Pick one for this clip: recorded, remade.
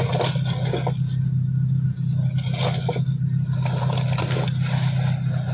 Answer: recorded